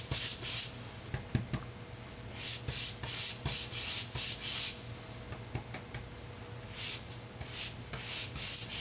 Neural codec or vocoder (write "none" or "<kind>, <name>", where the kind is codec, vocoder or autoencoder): none